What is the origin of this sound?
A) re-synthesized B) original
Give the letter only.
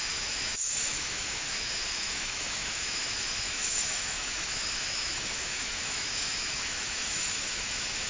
A